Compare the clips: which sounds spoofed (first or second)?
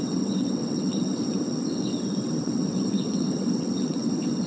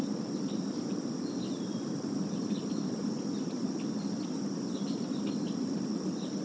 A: first